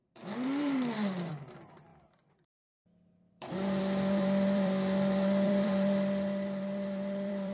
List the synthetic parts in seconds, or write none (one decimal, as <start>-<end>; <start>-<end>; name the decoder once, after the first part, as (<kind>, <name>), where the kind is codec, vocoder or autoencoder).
0.0-7.5 (vocoder, BigVGAN v2)